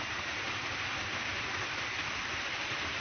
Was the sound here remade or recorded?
remade